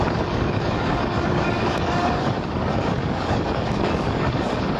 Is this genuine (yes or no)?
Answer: no